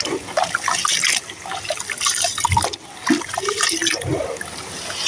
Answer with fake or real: real